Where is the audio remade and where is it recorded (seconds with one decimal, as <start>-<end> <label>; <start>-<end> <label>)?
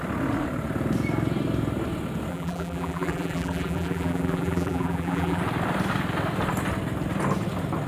0.0-2.3 recorded; 2.3-5.4 remade; 5.4-7.9 recorded